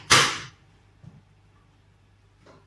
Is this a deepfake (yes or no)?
yes